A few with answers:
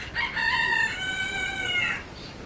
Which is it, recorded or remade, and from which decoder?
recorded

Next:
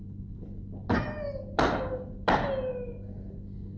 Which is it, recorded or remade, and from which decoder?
recorded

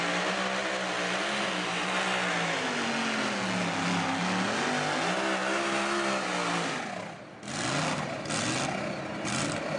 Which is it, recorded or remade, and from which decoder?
recorded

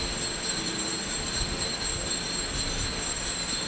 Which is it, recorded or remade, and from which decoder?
recorded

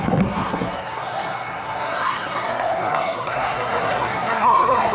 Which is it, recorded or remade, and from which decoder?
remade, codec, SNAC